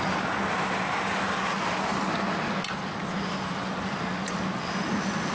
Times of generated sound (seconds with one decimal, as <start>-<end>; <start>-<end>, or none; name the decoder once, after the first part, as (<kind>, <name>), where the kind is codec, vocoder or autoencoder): none